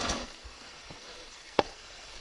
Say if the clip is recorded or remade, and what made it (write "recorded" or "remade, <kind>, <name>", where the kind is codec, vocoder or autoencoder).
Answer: remade, codec, SNAC